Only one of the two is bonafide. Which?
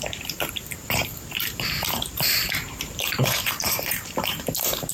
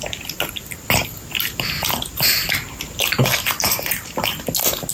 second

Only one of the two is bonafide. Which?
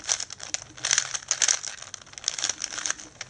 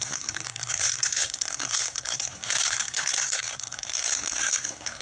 first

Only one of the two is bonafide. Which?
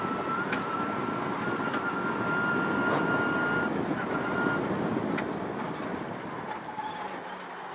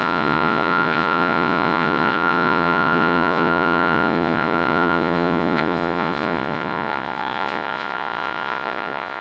first